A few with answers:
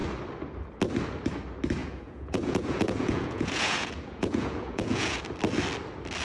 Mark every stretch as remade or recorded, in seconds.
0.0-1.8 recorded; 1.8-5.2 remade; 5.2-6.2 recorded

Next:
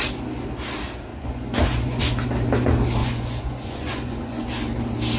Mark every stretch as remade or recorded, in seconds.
0.0-1.1 recorded; 1.1-2.0 remade; 2.0-3.0 recorded; 3.0-4.5 remade; 4.5-5.2 recorded

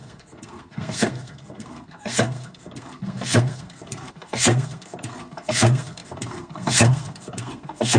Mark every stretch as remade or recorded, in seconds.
0.0-8.0 remade

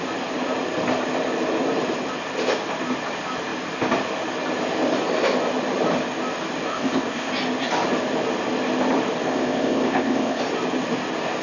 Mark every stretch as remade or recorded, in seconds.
0.0-6.7 recorded; 6.7-7.3 remade; 7.3-9.3 recorded; 9.3-10.4 remade; 10.4-11.4 recorded